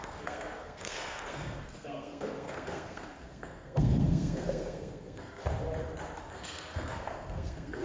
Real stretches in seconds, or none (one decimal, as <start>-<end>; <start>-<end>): 5.4-6.3